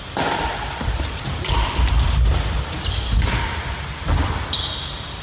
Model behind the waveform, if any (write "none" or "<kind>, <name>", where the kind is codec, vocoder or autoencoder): none